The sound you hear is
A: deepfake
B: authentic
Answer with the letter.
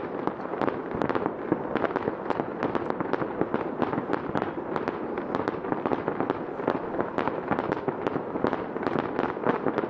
B